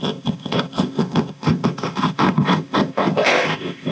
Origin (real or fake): fake